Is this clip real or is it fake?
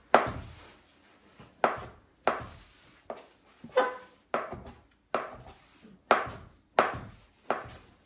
real